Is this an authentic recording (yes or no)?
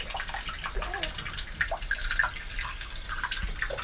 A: yes